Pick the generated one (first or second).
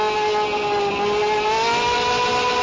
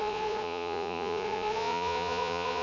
second